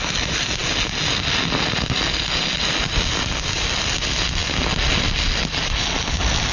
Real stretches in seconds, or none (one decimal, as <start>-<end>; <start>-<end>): 0.0-6.5